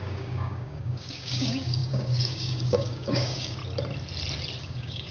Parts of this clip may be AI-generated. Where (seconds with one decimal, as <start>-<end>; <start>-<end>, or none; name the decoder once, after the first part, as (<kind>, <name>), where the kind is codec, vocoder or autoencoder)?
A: 0.0-3.6 (codec, DAC); 4.6-5.1